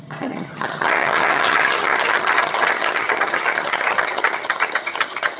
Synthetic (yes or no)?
yes